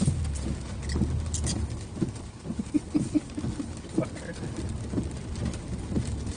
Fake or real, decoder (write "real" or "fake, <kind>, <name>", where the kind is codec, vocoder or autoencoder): real